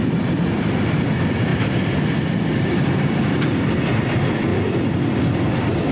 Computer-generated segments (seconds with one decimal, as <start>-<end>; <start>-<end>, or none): 0.0-4.5; 5.2-5.9